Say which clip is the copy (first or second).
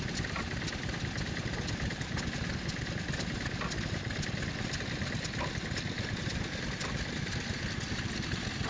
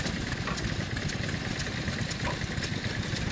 second